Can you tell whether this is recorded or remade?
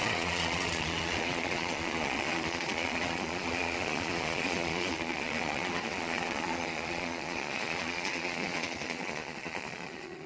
remade